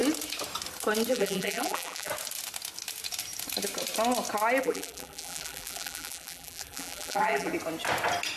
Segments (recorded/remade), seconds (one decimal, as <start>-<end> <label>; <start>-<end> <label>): 0.0-1.1 recorded; 1.1-2.1 remade; 2.1-4.6 recorded; 4.6-7.5 remade; 7.5-8.4 recorded